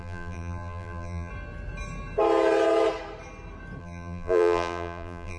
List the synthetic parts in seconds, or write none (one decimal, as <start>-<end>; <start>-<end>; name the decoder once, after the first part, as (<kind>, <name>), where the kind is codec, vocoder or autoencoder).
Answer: 0.0-1.3 (vocoder, BigVGAN v2); 3.8-5.4